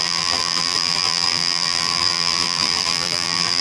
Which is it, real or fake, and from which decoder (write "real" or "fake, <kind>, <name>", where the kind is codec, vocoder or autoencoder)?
fake, vocoder, BigVGAN v2